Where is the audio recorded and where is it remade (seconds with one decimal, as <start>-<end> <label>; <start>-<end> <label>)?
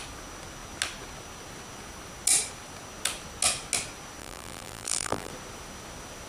0.0-4.2 recorded; 4.2-5.3 remade; 5.3-6.3 recorded